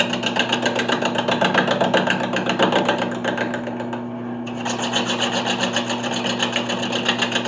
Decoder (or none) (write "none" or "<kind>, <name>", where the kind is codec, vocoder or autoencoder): none